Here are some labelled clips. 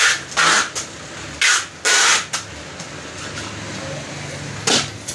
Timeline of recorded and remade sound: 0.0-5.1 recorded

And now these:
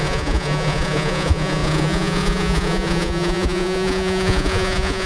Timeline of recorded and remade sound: 0.0-5.1 remade